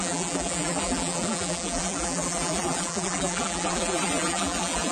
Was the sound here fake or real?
fake